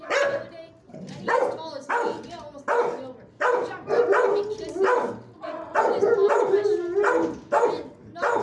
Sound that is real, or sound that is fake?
real